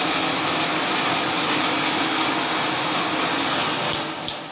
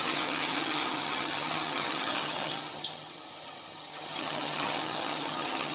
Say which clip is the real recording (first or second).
first